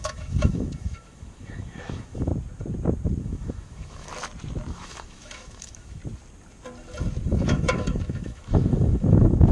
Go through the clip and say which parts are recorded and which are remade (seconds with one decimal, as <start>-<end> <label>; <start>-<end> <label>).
0.0-2.3 remade; 2.3-3.2 recorded; 3.2-4.1 remade; 4.1-4.7 recorded; 4.7-6.0 remade; 6.0-7.4 recorded; 7.4-9.5 remade